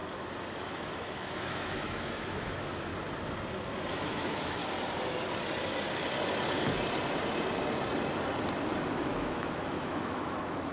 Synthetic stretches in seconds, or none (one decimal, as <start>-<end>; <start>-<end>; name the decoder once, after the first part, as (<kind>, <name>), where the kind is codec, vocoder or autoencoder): 0.6-2.9 (autoencoder, DAC-VAE); 3.9-4.6; 8.9-10.7